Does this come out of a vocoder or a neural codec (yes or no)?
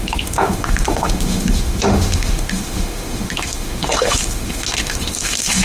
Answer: yes